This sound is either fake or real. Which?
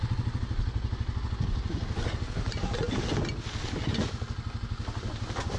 real